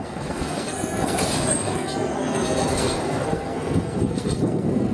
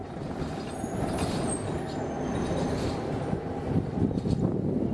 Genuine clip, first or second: second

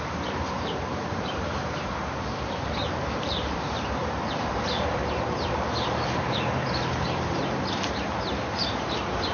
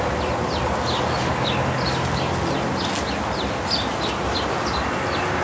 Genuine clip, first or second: second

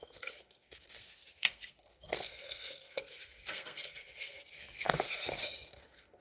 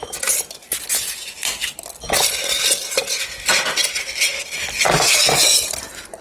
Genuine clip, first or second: second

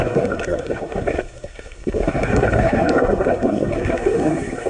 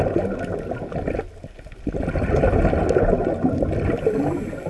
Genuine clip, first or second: second